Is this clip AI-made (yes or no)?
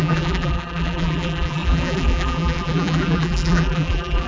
yes